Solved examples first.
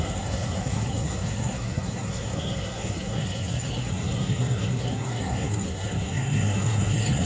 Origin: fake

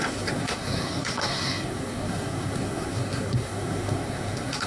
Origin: fake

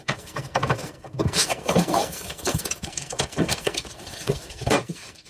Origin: fake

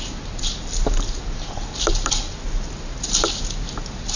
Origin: real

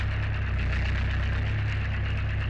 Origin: real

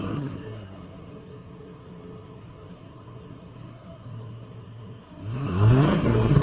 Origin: fake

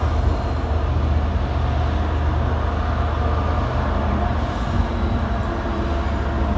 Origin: real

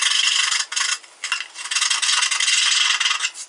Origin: real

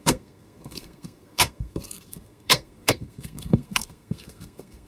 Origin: fake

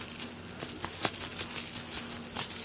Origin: real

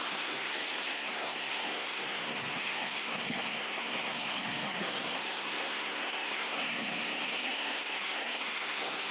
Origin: fake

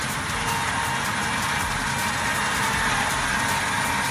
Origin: real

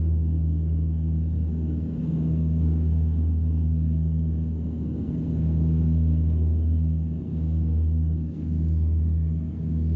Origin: fake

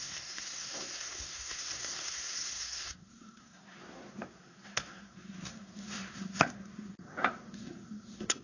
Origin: fake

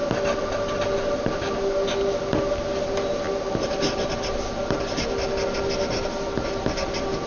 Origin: real